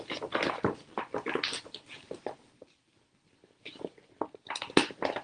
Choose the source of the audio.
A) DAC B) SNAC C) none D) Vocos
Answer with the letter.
C